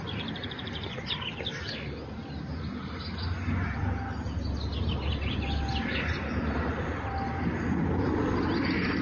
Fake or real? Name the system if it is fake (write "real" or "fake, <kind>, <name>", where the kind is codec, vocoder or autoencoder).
real